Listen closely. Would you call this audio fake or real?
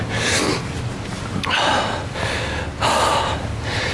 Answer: real